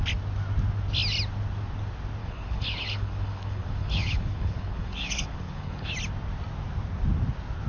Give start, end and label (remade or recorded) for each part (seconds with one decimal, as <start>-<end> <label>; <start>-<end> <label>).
0.0-2.2 recorded; 2.2-5.9 remade; 5.9-7.7 recorded